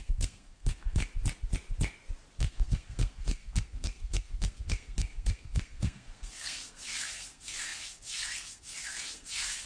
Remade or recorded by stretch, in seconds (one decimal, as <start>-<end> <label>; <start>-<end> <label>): 0.0-1.0 remade; 1.0-2.4 recorded; 2.4-9.7 remade